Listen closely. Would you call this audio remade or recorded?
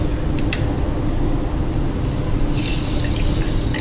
recorded